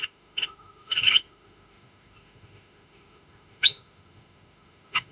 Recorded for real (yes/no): no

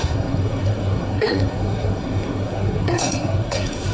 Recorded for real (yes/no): no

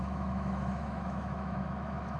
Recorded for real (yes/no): no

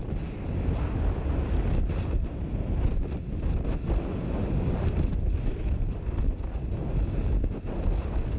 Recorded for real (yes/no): yes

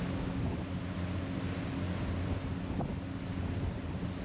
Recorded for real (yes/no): yes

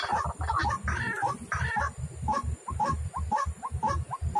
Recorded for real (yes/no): yes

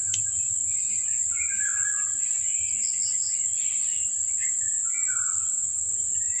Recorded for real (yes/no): yes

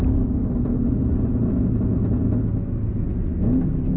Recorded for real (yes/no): yes